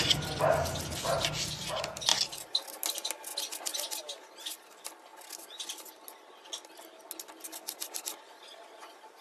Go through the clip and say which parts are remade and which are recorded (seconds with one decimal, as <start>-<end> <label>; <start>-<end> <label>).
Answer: 0.0-9.2 recorded